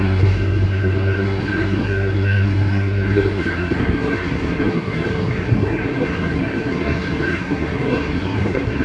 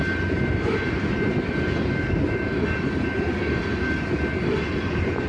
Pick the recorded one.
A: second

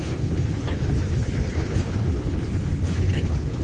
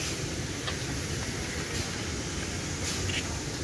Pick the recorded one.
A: second